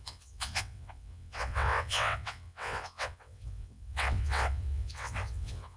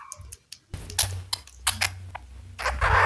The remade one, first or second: first